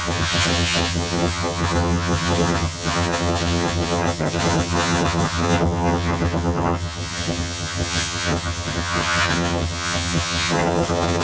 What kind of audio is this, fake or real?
fake